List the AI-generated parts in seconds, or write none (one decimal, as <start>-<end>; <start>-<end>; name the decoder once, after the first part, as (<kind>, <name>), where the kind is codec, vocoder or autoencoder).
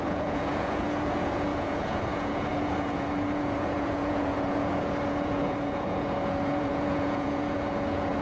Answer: 0.0-8.2 (vocoder, Vocos)